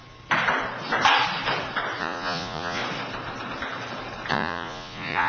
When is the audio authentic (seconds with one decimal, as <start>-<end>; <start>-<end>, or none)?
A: 0.0-2.0; 2.8-4.3